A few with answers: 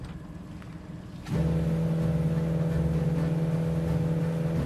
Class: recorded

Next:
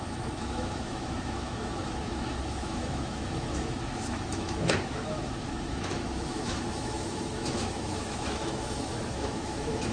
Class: remade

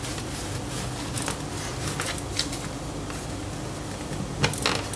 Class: recorded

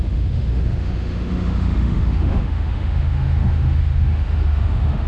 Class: remade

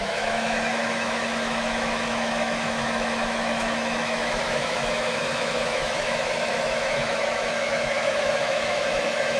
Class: remade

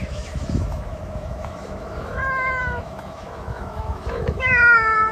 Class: remade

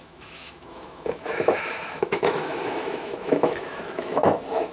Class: remade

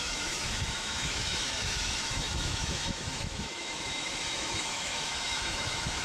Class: remade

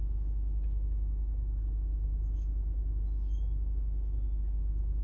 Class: remade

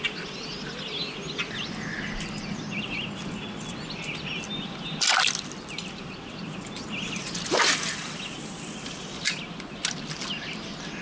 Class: recorded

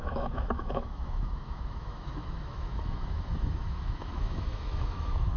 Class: remade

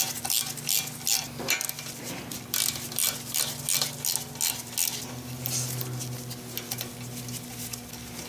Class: recorded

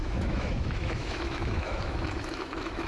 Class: remade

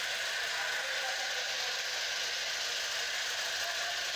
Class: recorded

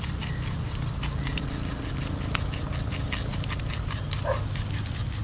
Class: recorded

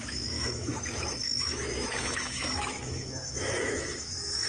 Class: remade